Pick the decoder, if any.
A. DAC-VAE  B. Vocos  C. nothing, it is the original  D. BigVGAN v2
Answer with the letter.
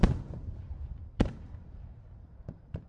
D